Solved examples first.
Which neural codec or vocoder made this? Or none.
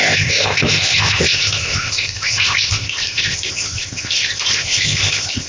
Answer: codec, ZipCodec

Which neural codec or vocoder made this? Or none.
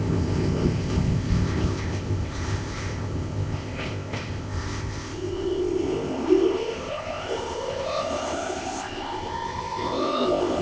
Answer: codec, ZipCodec